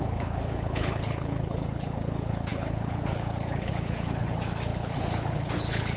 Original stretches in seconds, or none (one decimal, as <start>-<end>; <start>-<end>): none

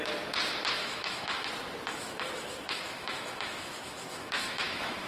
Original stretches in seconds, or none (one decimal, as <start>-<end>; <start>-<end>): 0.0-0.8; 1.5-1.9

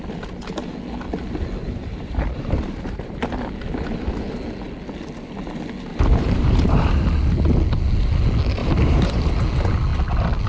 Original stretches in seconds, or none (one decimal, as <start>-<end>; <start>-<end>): 0.0-1.6; 3.3-5.9; 6.9-8.6; 9.3-10.5